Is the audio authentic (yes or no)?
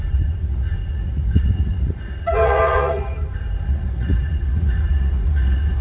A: no